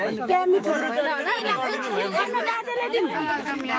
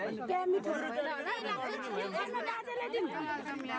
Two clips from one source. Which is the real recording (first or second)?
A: second